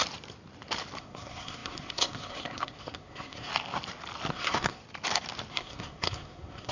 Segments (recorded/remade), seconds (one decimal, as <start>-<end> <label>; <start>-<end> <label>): 0.0-1.0 recorded; 1.0-3.5 remade; 3.5-4.3 recorded; 4.3-4.8 remade; 4.8-5.5 recorded; 5.5-6.7 remade